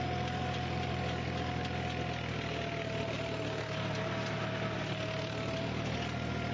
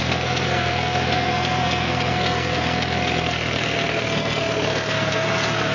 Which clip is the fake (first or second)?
second